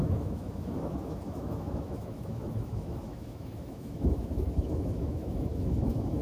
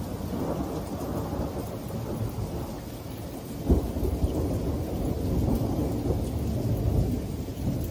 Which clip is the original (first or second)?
second